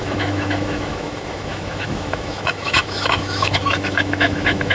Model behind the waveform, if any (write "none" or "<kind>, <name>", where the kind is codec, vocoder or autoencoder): autoencoder, DAC-VAE